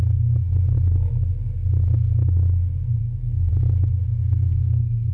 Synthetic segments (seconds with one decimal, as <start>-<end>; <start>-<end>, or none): 3.0-3.5; 4.2-5.1